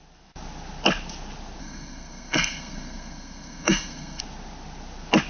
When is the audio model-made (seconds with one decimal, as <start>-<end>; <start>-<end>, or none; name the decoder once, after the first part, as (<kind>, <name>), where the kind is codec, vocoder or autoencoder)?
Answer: 1.6-4.2 (codec, SNAC)